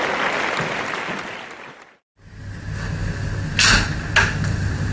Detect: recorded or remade recorded